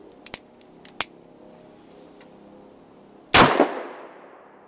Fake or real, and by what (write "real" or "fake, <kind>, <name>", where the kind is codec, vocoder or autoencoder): real